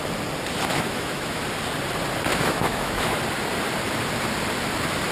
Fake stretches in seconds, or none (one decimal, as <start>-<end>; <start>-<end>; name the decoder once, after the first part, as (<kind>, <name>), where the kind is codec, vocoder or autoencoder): 0.7-1.4 (autoencoder, DAC-VAE); 2.3-3.2